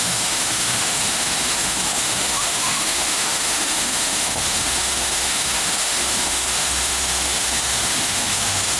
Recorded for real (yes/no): no